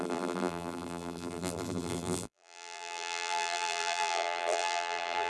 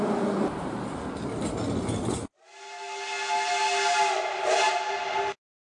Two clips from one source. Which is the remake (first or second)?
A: first